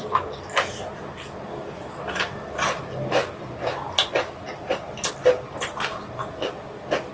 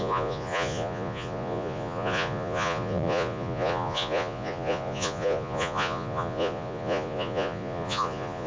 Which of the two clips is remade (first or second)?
second